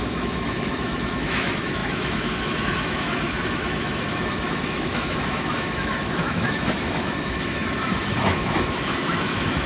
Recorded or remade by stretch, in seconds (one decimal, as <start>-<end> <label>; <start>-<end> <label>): 0.0-9.7 remade